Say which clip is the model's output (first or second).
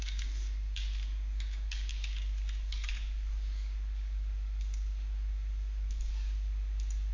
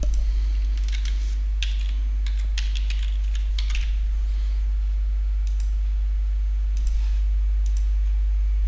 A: first